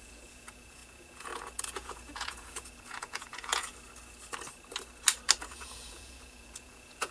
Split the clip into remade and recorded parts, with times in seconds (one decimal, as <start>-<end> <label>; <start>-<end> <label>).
0.0-3.7 remade; 3.7-5.4 recorded; 5.4-7.1 remade